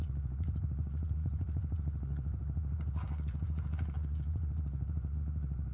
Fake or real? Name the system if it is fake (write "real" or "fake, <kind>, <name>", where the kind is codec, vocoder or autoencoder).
fake, vocoder, Vocos